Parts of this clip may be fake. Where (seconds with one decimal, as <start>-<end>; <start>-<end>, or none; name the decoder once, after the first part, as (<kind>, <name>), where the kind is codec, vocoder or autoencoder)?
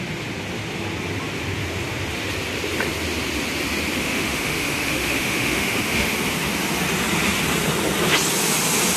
4.0-6.1 (autoencoder, DAC-VAE)